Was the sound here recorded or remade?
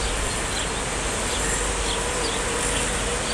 recorded